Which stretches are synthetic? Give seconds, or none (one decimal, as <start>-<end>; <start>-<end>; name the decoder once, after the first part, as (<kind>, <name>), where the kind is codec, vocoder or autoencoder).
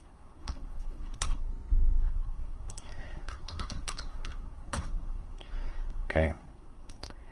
0.0-1.5 (codec, SNAC); 2.0-7.3